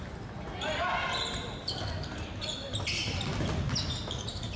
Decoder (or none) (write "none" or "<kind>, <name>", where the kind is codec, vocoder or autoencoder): none